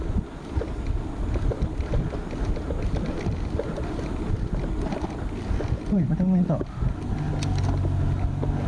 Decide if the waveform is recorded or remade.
recorded